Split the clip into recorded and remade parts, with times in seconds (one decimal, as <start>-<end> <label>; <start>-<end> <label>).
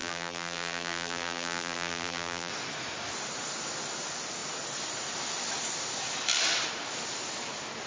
0.0-2.5 remade; 2.5-7.9 recorded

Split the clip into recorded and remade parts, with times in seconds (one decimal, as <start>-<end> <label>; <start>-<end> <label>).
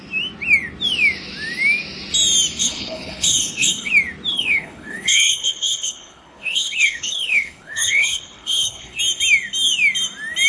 0.0-2.6 recorded; 2.6-3.9 remade; 3.9-4.3 recorded; 4.3-9.0 remade; 9.0-10.5 recorded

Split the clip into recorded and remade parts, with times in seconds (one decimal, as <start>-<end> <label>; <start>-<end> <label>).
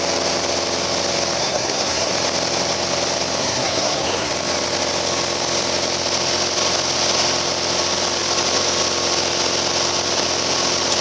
0.0-1.4 recorded; 1.4-2.1 remade; 2.1-3.4 recorded; 3.4-4.3 remade; 4.3-11.0 recorded